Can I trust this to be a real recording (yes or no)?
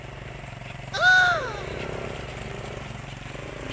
no